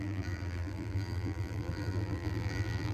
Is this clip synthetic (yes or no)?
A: yes